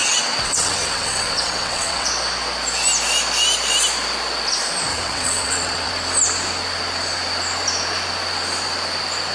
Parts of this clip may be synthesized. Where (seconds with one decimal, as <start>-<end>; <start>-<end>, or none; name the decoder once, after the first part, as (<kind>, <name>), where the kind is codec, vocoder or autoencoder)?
0.0-2.1 (vocoder, WaveNeXt); 4.9-5.9